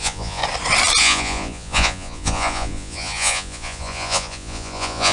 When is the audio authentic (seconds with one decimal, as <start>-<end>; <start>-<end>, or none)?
0.4-1.0